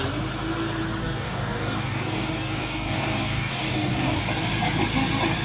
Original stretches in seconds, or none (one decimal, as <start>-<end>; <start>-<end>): 0.0-1.0; 4.2-5.4